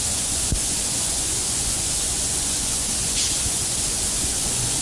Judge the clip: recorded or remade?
remade